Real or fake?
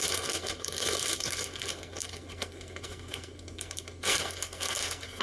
fake